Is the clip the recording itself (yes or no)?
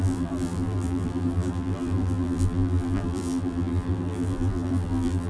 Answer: no